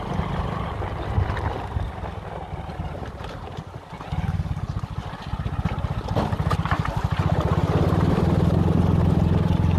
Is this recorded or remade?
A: recorded